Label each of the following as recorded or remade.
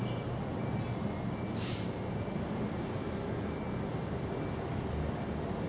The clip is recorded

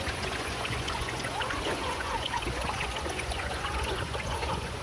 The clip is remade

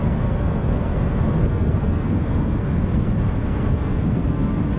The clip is remade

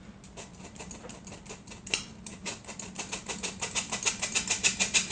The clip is recorded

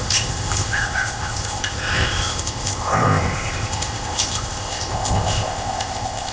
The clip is remade